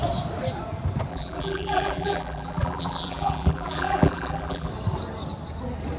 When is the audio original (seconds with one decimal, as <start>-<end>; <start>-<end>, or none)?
0.0-1.1; 4.7-6.0